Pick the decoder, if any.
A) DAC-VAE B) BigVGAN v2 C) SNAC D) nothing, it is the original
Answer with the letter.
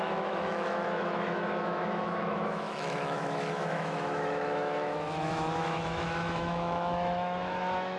A